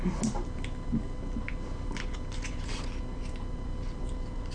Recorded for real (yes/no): yes